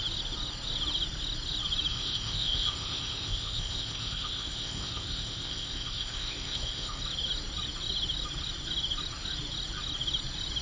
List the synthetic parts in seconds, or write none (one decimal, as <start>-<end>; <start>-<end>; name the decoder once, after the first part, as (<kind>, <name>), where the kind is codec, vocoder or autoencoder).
1.9-7.0 (codec, ZipCodec)